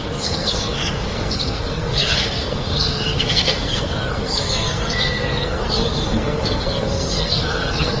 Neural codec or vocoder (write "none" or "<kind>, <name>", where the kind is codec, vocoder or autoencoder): codec, SNAC